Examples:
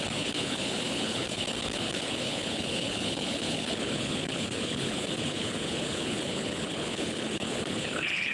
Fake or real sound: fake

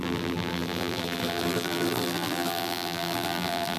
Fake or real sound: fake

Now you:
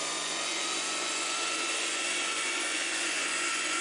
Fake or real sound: fake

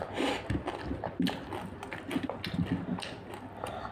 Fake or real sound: real